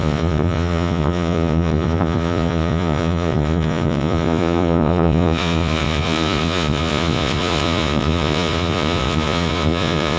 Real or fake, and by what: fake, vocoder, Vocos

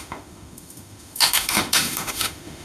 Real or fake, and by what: fake, autoencoder, DAC-VAE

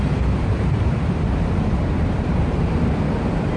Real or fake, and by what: fake, vocoder, BigVGAN v2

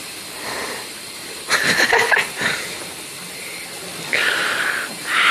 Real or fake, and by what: real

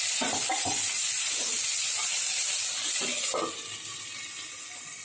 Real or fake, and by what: real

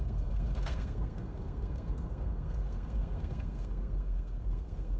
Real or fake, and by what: fake, codec, SNAC